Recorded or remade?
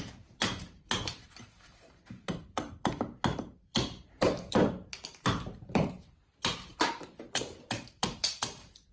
remade